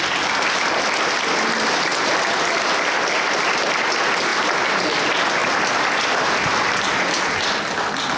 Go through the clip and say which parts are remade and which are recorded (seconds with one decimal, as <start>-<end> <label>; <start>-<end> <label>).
0.0-8.2 recorded